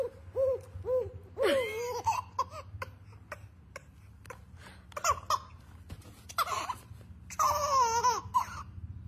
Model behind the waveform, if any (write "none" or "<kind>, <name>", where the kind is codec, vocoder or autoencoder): none